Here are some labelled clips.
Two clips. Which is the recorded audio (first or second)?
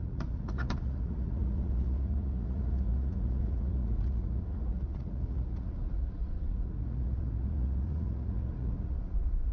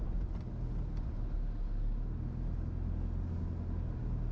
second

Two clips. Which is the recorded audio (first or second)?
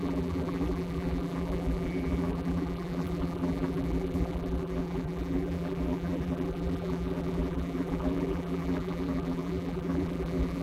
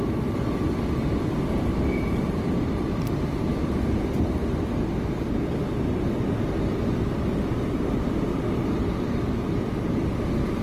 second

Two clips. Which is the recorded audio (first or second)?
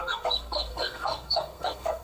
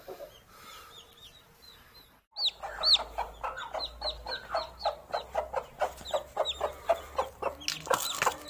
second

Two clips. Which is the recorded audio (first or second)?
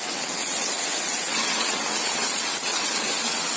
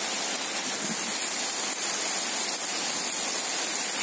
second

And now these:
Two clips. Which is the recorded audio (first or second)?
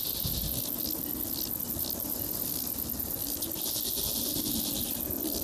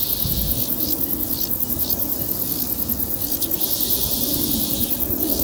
first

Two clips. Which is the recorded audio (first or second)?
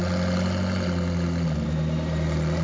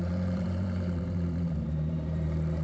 first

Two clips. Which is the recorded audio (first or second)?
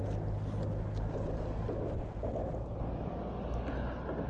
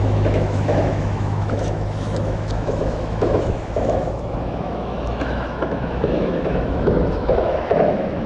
first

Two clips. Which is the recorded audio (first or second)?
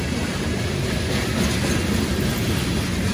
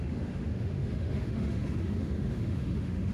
first